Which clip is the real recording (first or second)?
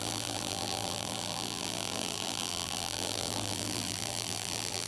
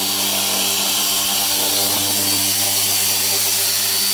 second